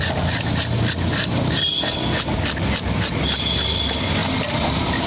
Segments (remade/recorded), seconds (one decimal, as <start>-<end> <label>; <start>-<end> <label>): 0.0-5.1 recorded